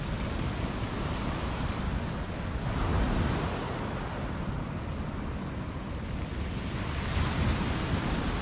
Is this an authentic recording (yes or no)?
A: yes